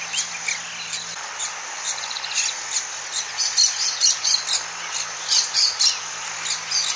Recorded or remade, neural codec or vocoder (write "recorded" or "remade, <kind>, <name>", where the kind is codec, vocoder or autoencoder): recorded